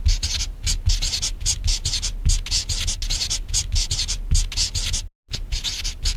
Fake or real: real